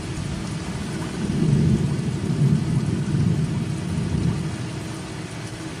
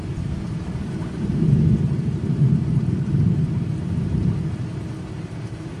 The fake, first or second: second